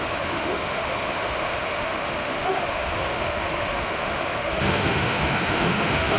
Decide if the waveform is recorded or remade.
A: remade